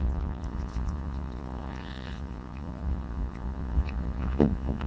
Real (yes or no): no